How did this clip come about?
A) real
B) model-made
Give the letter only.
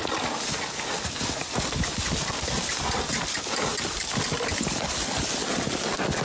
A